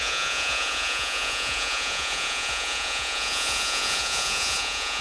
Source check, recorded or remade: remade